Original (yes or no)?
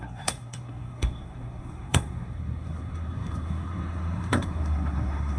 no